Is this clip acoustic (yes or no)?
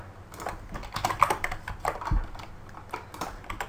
yes